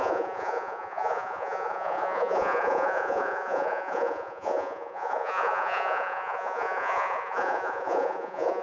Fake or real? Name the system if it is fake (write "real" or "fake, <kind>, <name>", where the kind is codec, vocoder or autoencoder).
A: fake, vocoder, Vocos